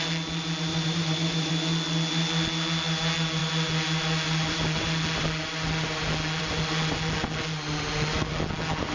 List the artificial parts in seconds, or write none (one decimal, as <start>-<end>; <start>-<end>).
0.7-1.5